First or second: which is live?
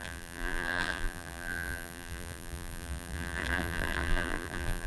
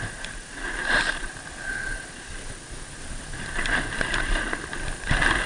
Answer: second